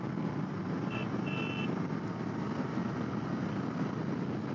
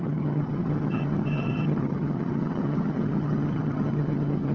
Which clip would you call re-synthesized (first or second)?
second